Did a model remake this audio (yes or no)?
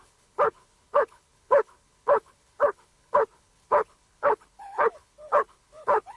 yes